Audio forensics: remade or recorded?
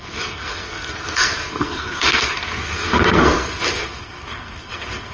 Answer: remade